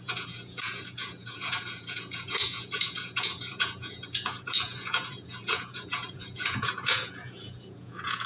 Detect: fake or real fake